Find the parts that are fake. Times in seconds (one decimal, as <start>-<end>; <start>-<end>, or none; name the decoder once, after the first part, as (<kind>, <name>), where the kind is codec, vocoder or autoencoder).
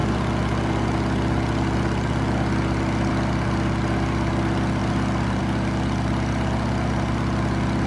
none